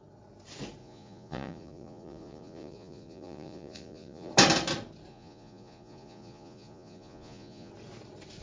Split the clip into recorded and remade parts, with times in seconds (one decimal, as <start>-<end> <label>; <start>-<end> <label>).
0.0-0.8 recorded; 0.8-4.3 remade; 4.3-5.1 recorded; 5.1-7.7 remade; 7.7-8.4 recorded